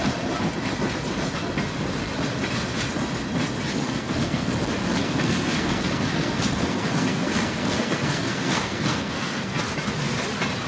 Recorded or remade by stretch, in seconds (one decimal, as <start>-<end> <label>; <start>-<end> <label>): 0.0-3.7 recorded; 3.7-4.5 remade; 4.5-5.0 recorded; 5.0-9.6 remade; 9.6-10.7 recorded